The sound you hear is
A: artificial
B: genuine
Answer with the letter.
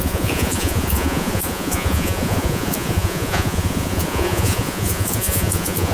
A